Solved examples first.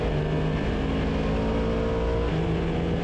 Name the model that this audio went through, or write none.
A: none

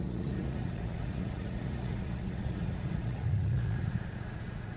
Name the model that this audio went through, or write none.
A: vocoder, Vocos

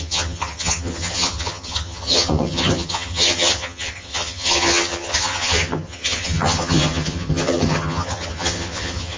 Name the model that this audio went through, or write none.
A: vocoder, HiFi-GAN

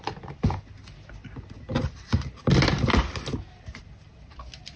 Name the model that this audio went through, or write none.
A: none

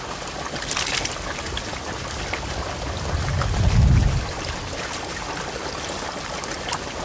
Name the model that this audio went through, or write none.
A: none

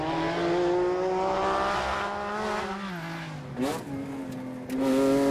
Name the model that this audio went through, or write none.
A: none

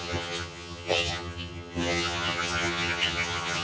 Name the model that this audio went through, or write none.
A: vocoder, HiFi-GAN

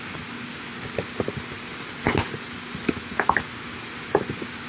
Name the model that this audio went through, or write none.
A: none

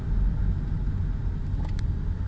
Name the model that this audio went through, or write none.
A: none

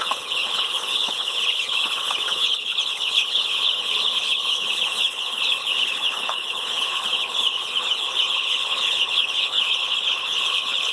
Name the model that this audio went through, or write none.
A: codec, HILCodec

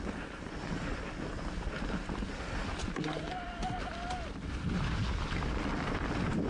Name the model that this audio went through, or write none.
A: none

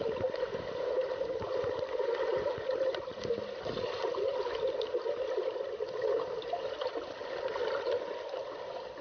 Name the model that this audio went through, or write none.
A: none